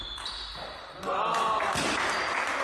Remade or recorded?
recorded